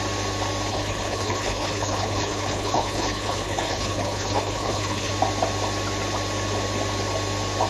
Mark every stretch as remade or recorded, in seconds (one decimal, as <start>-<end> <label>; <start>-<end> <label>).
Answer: 0.0-0.7 recorded; 0.7-5.1 remade; 5.1-7.7 recorded